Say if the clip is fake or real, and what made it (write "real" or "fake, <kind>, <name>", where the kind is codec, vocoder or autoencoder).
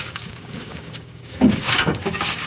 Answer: fake, codec, DAC